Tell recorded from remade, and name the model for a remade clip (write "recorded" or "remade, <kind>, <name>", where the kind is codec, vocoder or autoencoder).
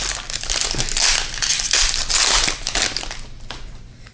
recorded